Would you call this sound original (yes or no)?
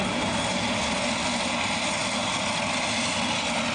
yes